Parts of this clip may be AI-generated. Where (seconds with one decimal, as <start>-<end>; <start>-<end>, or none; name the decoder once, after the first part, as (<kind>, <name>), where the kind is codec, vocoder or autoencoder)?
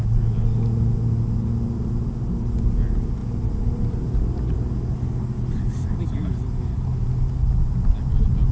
none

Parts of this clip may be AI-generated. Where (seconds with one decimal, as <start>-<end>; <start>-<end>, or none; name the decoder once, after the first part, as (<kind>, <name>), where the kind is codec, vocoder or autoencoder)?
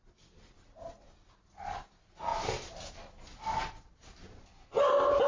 none